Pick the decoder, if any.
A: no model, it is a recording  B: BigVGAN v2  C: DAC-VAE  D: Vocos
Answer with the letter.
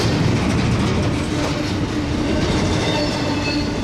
A